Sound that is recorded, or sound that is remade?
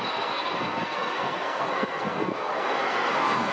remade